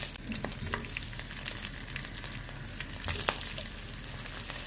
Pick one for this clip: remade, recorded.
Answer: recorded